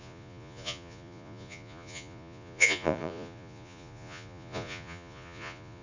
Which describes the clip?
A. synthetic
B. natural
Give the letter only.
A